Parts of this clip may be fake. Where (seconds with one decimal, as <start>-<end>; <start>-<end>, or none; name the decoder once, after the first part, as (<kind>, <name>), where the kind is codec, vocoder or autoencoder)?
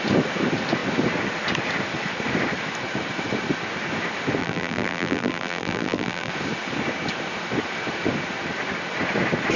4.4-6.3 (vocoder, BigVGAN v2)